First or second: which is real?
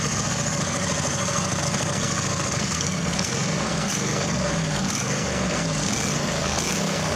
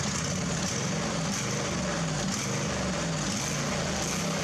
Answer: second